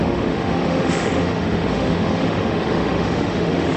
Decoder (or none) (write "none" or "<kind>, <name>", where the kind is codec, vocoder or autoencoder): autoencoder, DAC-VAE